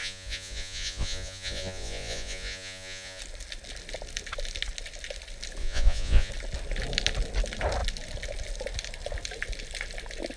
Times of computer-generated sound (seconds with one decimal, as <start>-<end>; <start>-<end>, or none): 0.0-3.2; 5.6-6.3